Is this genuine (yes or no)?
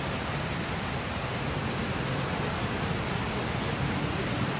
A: yes